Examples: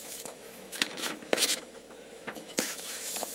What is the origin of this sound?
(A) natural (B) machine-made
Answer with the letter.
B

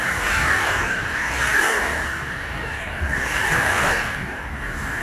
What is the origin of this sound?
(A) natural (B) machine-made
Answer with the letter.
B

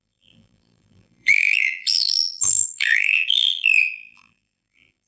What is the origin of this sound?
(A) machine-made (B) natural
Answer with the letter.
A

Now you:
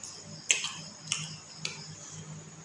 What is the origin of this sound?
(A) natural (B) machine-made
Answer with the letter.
A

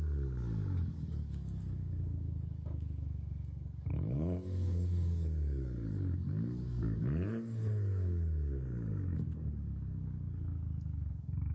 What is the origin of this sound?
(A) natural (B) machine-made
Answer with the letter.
B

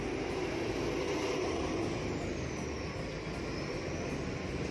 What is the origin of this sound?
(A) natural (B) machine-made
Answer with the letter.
A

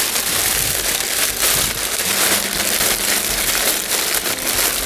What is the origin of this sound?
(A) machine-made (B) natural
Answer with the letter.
B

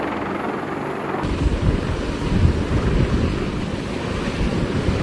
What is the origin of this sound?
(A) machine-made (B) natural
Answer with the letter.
B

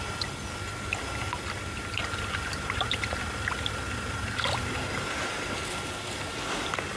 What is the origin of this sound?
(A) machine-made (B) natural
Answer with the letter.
B